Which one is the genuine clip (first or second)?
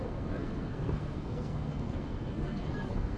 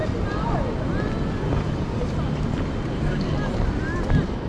second